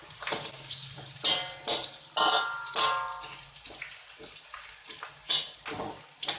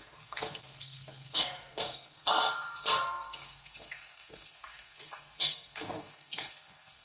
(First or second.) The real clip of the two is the first